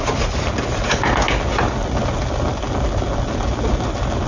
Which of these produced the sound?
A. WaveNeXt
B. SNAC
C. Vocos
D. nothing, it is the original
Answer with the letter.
D